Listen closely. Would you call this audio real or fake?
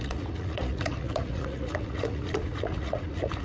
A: fake